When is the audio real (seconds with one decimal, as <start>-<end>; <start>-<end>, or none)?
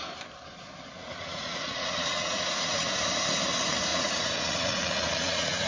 0.0-1.0; 2.9-3.9